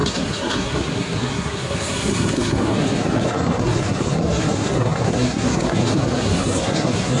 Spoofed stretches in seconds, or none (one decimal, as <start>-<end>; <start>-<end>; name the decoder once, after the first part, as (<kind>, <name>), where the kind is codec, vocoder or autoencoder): 0.0-7.2 (codec, SNAC)